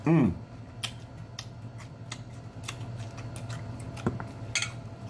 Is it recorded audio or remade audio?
recorded